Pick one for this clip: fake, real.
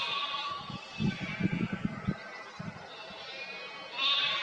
real